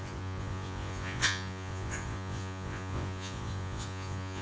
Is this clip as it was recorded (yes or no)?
no